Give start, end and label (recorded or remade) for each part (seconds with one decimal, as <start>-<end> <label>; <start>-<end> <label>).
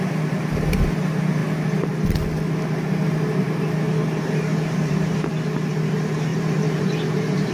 0.0-4.5 recorded; 4.5-5.3 remade; 5.3-6.3 recorded; 6.3-7.5 remade